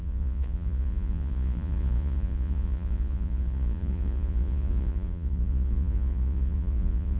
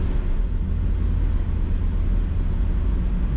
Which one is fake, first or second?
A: first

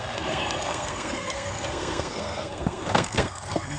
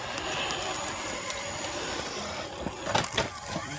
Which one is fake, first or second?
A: first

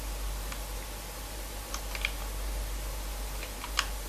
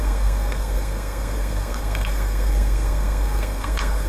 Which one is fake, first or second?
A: second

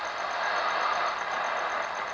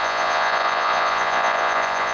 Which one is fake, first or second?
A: second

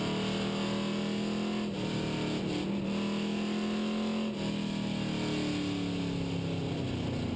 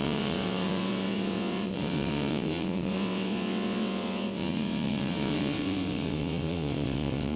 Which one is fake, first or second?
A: second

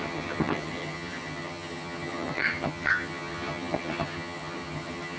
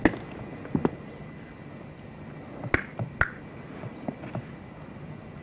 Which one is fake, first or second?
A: first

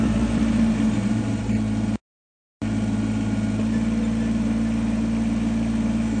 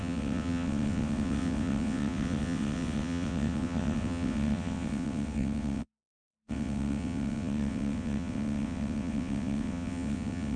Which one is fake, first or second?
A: second